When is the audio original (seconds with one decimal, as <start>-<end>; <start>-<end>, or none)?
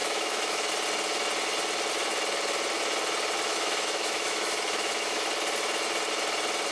0.7-3.5; 5.2-6.7